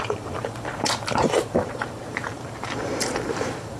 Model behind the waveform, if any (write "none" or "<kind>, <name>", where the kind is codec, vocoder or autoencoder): vocoder, BigVGAN v2